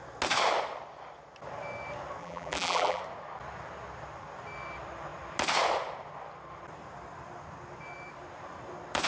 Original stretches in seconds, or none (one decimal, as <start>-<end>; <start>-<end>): 0.0-2.2; 3.0-9.1